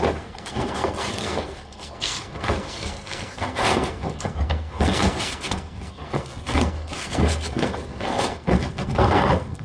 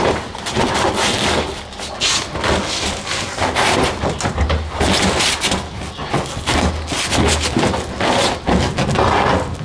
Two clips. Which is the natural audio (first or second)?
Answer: second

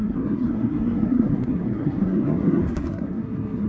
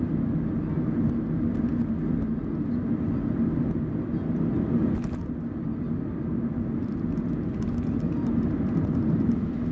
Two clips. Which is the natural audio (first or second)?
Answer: second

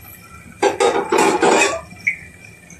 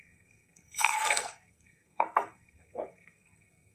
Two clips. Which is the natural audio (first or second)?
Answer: first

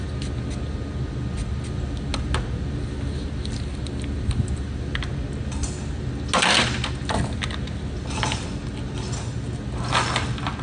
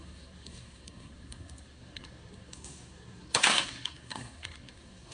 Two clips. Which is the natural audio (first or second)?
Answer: first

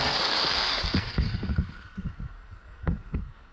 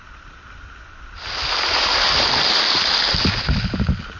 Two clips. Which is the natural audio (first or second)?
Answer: second